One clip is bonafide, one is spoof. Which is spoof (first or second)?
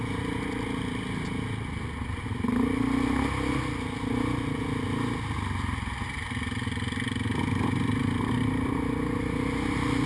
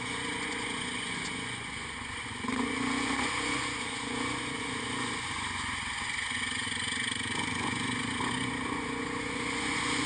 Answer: second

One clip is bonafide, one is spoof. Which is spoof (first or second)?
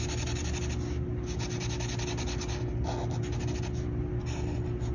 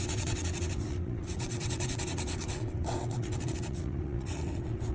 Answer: second